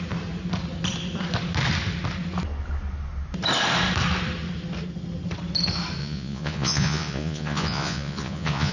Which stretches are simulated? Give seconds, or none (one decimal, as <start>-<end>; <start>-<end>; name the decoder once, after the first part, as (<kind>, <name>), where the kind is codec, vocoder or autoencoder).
6.0-8.7 (vocoder, Vocos)